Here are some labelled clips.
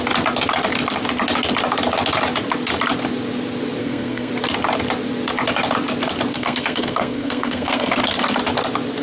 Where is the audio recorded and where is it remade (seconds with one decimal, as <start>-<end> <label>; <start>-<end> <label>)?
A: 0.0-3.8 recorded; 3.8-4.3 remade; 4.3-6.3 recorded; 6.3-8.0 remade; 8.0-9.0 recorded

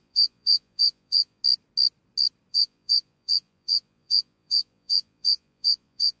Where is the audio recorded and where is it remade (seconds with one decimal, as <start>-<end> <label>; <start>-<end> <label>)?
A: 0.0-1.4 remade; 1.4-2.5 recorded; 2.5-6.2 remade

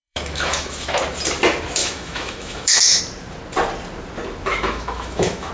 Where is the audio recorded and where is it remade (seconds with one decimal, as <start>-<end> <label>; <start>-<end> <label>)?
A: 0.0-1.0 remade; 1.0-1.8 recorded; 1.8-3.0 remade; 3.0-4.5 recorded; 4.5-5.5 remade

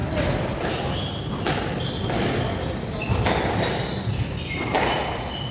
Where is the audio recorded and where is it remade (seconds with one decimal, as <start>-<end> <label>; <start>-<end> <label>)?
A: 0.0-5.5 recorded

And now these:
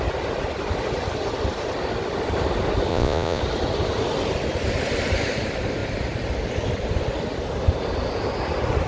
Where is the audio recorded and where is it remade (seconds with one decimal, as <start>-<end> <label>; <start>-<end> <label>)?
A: 0.0-2.9 recorded; 2.9-3.4 remade; 3.4-8.9 recorded

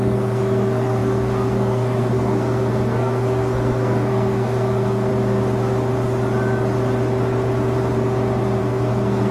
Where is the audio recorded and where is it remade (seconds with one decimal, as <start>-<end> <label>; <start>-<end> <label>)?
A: 0.0-5.1 remade; 5.1-8.6 recorded; 8.6-9.3 remade

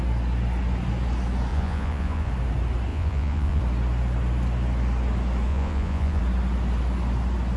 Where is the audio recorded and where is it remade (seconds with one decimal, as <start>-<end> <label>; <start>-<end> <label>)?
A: 0.0-1.5 recorded; 1.5-2.3 remade; 2.3-2.9 recorded; 2.9-3.6 remade; 3.6-5.5 recorded; 5.5-6.2 remade; 6.2-7.6 recorded

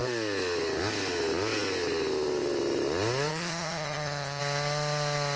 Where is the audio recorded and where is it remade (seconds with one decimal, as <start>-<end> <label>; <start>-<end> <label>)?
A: 0.0-3.3 recorded; 3.3-4.4 remade; 4.4-5.4 recorded